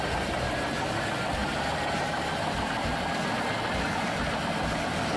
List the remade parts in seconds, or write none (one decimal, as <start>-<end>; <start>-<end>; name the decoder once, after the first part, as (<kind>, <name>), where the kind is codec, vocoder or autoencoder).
none